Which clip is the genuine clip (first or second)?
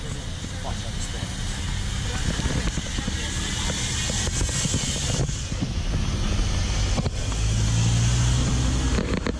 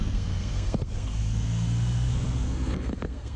first